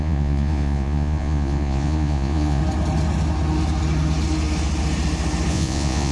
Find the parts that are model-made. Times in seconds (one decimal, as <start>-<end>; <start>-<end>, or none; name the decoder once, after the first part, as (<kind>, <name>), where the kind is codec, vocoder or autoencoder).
0.0-2.6 (vocoder, Vocos); 5.5-6.1